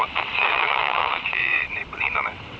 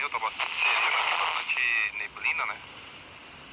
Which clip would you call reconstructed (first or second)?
first